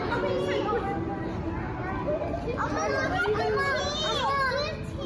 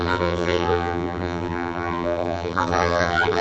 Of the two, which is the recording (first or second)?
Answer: first